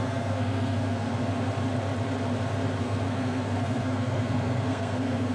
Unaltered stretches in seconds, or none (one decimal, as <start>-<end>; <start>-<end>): 1.1-2.8